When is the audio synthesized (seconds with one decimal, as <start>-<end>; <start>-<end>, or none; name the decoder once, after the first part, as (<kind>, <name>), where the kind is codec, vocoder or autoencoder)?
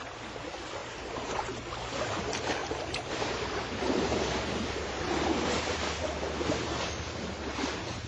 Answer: 0.8-2.2 (vocoder, BigVGAN v2); 2.6-5.7